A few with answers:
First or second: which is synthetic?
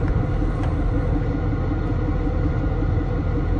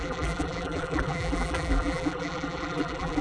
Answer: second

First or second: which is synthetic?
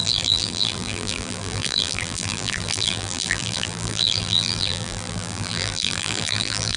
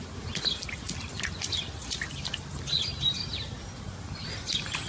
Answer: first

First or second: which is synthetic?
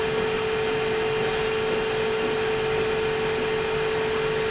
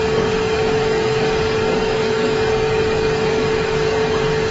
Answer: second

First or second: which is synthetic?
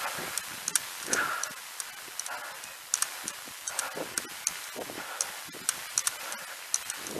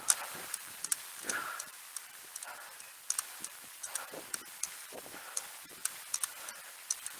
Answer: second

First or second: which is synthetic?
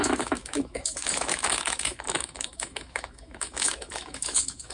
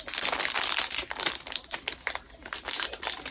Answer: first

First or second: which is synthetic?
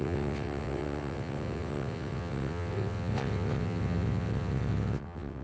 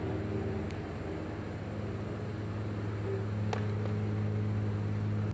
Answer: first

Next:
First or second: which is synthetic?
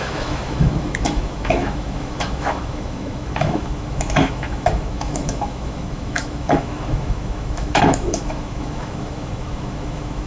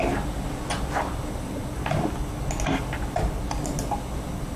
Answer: first